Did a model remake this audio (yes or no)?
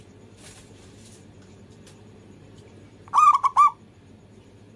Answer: yes